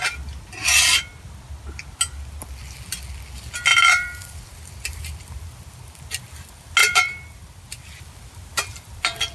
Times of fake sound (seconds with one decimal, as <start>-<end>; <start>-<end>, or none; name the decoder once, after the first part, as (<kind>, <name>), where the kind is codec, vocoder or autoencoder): 3.7-5.0 (vocoder, BigVGAN v2); 6.8-8.0; 8.5-9.3